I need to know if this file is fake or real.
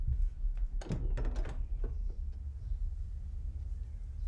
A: real